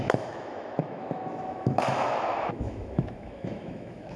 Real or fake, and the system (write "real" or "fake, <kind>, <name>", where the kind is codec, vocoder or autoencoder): fake, autoencoder, DAC-VAE